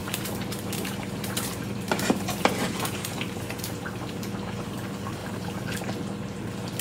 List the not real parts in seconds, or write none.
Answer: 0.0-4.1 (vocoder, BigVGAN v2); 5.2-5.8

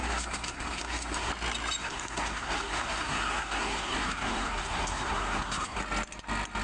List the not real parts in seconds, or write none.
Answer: 0.0-1.3 (codec, SNAC); 1.8-5.8

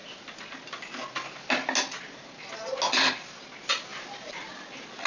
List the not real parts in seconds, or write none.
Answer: none